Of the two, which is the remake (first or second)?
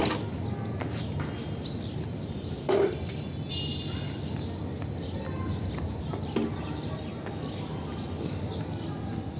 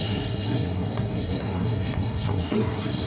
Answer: second